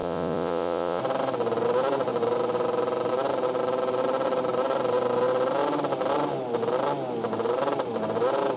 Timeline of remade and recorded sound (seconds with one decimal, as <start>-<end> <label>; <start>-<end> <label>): 0.0-1.0 remade; 1.0-8.6 recorded